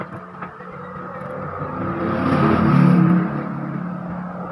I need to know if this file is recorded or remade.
recorded